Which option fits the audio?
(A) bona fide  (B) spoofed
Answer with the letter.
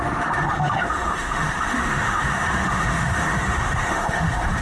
B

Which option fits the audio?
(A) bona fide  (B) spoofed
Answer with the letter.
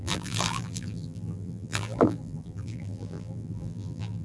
B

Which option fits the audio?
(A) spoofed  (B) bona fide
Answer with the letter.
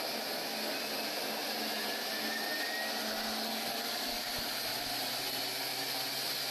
B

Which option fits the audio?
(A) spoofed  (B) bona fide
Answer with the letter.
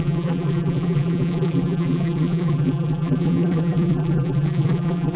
A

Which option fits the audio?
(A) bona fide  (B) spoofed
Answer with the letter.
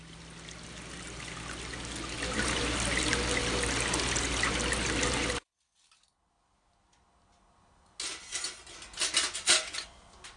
A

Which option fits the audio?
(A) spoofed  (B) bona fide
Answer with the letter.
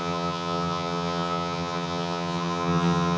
A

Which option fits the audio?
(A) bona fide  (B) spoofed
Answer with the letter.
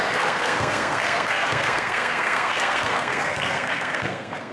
B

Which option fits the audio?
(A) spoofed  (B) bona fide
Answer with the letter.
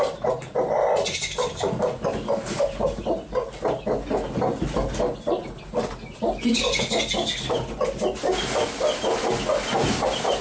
B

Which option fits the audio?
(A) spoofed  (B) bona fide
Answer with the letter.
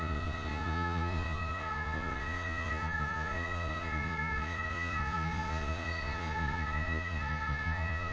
A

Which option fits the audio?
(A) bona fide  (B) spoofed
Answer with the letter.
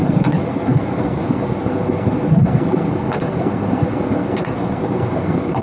B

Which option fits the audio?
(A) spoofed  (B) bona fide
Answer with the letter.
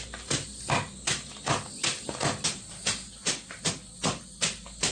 B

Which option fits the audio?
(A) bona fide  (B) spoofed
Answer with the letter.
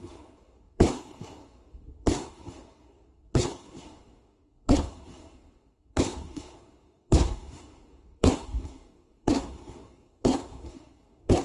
B